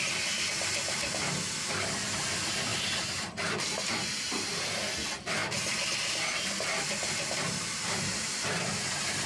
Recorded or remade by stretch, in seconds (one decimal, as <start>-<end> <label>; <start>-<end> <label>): 0.0-9.3 recorded